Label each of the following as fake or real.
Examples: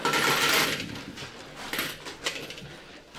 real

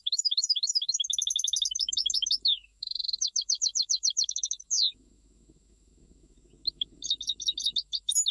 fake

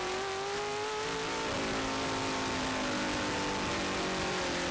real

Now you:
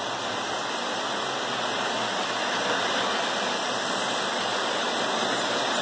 real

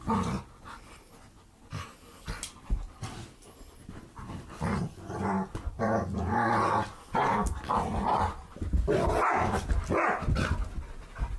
real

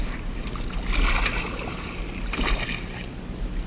real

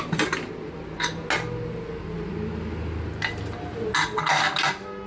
real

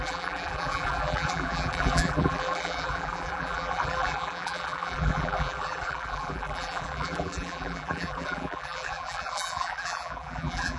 fake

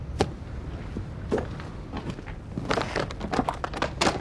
real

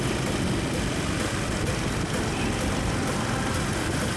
real